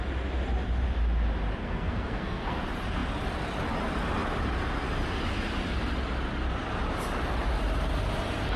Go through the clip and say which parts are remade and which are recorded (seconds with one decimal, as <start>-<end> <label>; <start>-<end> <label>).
0.0-1.6 recorded; 1.6-2.6 remade; 2.6-8.6 recorded